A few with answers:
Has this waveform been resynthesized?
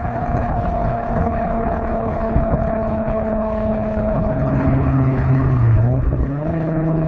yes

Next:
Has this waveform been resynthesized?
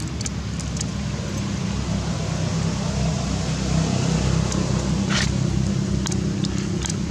no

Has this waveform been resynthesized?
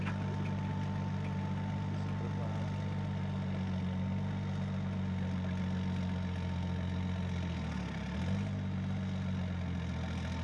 no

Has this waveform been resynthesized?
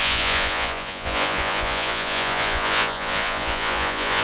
yes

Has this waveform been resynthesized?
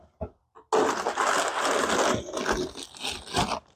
no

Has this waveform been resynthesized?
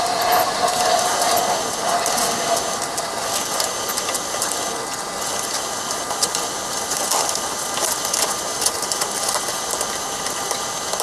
no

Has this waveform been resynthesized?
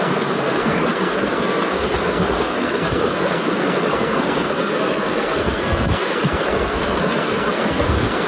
yes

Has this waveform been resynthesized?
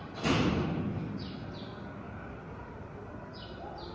no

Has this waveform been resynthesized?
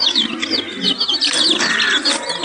no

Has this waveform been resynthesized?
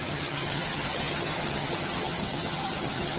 yes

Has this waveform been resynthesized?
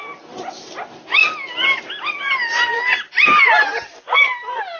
no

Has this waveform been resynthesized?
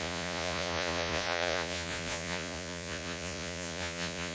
yes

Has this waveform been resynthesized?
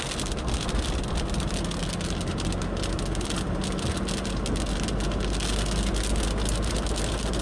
no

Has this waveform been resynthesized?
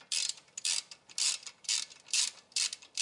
no